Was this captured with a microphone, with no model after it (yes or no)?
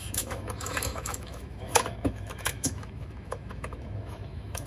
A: no